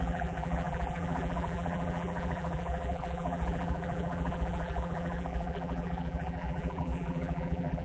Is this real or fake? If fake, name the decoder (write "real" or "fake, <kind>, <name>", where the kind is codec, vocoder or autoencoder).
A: fake, vocoder, BigVGAN v2